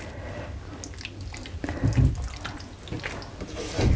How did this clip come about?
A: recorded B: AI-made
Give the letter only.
A